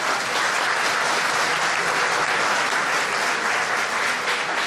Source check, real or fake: real